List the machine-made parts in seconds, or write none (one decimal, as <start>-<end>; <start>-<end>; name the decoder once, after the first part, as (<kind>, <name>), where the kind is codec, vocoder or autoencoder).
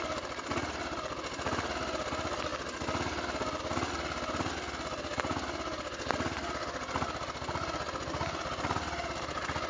none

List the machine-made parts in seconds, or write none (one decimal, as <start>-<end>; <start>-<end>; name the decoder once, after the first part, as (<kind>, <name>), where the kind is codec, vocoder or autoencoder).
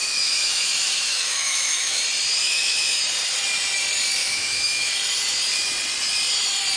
0.0-2.0 (autoencoder, DAC-VAE); 2.4-3.0; 4.2-4.9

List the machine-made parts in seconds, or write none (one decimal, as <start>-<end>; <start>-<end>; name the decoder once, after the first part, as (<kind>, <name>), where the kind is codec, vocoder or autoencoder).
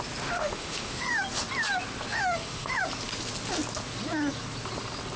0.4-1.1 (autoencoder, DAC-VAE); 2.1-2.8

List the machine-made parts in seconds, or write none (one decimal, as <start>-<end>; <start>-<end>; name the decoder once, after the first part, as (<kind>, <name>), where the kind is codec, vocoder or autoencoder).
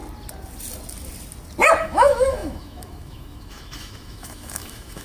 1.8-5.0 (autoencoder, DAC-VAE)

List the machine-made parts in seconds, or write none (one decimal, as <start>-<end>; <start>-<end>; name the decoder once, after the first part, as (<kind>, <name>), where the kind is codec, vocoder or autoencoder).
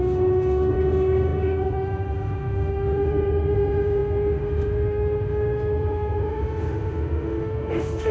0.0-8.1 (autoencoder, DAC-VAE)